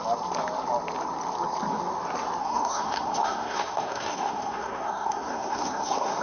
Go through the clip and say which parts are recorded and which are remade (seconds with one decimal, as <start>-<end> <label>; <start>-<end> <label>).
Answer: 0.0-2.4 recorded; 2.4-6.2 remade